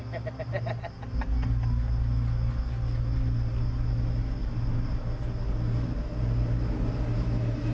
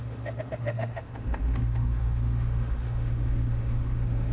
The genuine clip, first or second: first